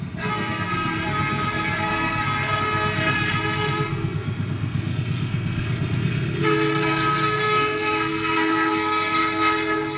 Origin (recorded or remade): remade